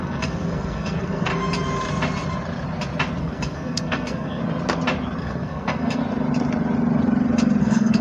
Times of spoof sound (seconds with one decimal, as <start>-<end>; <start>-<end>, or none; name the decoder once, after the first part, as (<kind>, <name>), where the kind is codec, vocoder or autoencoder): 0.0-1.3 (codec, SNAC); 3.2-4.4; 5.2-6.0; 7.6-8.0